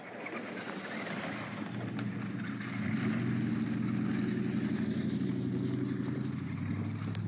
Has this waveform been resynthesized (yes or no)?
no